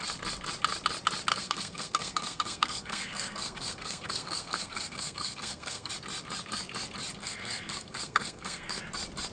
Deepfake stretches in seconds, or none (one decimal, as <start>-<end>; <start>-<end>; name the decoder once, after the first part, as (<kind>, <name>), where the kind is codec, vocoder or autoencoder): 1.3-5.9 (codec, SNAC); 7.2-8.8